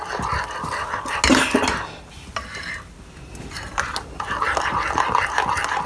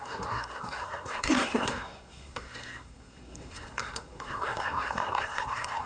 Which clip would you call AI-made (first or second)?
second